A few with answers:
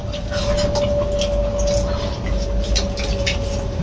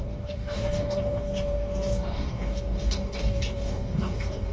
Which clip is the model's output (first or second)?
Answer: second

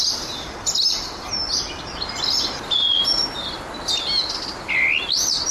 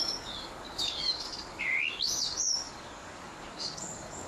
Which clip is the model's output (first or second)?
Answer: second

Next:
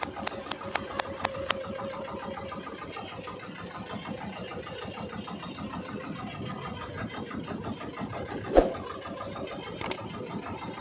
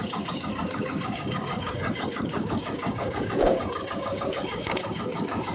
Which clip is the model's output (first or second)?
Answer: second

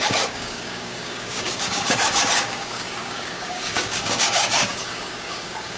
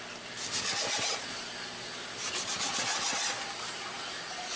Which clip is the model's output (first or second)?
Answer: first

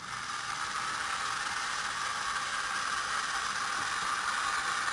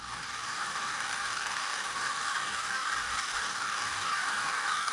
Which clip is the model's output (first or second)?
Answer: second